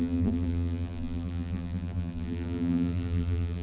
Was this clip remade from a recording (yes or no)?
yes